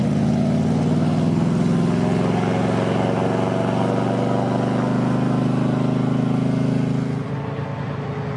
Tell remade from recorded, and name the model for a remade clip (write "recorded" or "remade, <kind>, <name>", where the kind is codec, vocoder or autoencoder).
recorded